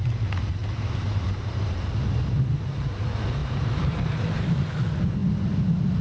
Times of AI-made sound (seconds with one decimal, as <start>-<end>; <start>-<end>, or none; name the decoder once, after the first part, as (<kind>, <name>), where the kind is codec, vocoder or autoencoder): 0.6-2.0 (vocoder, BigVGAN v2); 3.4-4.6